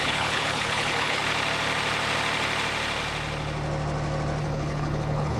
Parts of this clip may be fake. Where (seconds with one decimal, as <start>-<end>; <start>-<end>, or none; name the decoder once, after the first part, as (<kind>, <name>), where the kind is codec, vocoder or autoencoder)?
0.0-1.2 (codec, HILCodec); 4.4-5.4